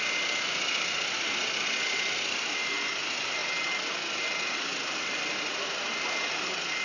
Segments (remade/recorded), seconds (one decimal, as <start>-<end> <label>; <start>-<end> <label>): 0.0-6.8 recorded